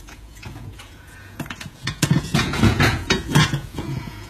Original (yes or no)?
no